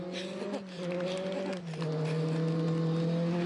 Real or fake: real